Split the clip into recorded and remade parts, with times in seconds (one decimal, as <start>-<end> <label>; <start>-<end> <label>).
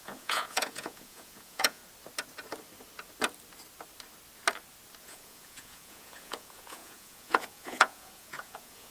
0.0-1.8 remade; 1.8-5.0 recorded; 5.0-8.9 remade